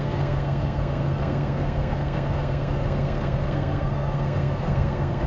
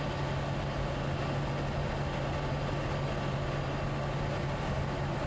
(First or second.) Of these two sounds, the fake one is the first